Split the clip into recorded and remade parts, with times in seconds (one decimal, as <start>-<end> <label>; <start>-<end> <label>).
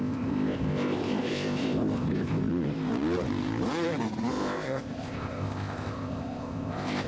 0.0-2.5 remade; 2.5-4.3 recorded; 4.3-7.1 remade